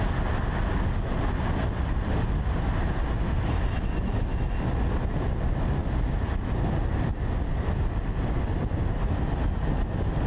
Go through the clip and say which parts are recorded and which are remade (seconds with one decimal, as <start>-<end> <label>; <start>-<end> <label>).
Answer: 0.0-10.3 recorded